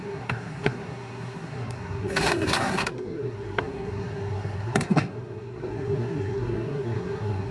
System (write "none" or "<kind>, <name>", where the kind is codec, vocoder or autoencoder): codec, SNAC